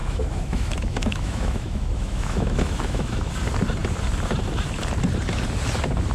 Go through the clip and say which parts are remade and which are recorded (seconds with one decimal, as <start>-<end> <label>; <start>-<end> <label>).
0.0-3.3 remade; 3.3-6.1 recorded